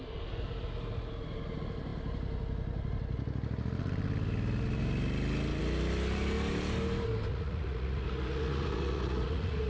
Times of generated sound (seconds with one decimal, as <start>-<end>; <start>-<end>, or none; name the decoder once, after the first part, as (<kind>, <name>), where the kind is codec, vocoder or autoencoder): 7.3-9.7 (vocoder, Vocos)